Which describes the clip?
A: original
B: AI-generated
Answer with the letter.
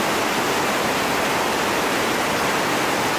A